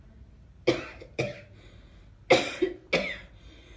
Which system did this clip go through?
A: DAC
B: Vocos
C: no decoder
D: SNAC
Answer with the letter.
C